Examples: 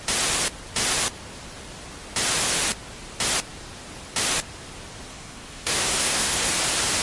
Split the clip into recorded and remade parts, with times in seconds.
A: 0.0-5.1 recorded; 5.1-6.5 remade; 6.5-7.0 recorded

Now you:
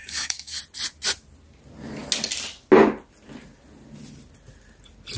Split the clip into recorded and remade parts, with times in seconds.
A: 0.0-0.6 remade; 0.6-5.2 recorded

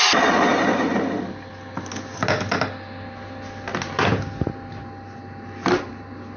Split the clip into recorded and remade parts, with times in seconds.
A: 0.0-0.5 recorded; 0.5-1.5 remade; 1.5-6.4 recorded

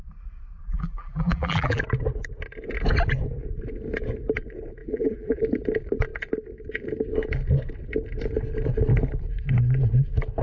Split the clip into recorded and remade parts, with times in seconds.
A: 0.0-0.6 recorded; 0.6-1.8 remade; 1.8-4.8 recorded; 4.8-5.4 remade; 5.4-10.4 recorded

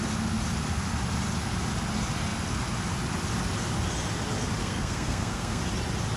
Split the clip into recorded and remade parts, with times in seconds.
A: 0.0-4.6 recorded; 4.6-5.6 remade; 5.6-6.2 recorded